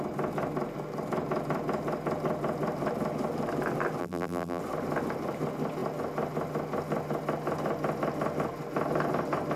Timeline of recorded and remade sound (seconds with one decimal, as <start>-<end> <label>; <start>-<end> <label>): 0.0-4.0 recorded; 4.0-4.6 remade; 4.6-9.6 recorded